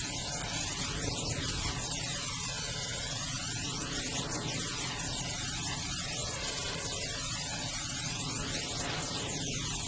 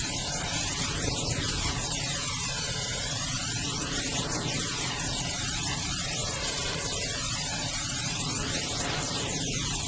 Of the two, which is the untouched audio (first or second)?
first